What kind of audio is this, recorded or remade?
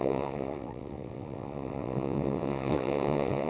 remade